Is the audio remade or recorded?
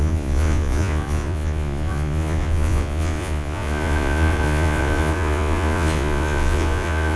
remade